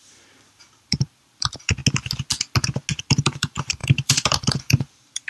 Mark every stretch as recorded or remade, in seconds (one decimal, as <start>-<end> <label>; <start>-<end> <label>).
0.0-1.8 remade; 1.8-3.0 recorded; 3.0-5.3 remade